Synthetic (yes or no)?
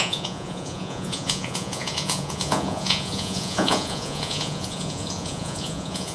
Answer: yes